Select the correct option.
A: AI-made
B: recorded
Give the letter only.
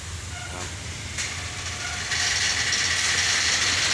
B